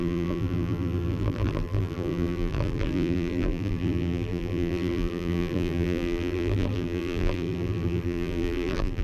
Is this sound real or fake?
fake